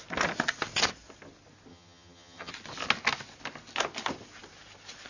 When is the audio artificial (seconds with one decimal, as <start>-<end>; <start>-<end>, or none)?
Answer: 1.7-2.5